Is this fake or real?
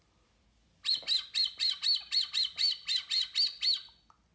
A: real